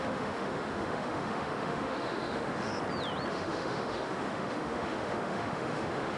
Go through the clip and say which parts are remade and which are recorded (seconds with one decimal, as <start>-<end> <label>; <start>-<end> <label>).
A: 0.0-2.7 remade; 2.7-3.3 recorded; 3.3-6.2 remade